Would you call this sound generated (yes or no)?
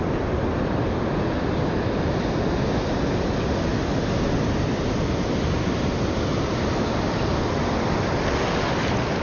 no